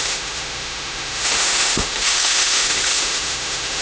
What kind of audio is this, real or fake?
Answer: fake